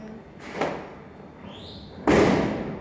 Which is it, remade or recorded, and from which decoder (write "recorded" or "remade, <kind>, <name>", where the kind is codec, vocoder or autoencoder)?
recorded